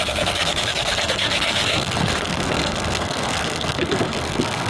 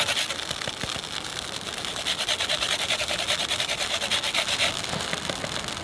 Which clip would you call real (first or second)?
second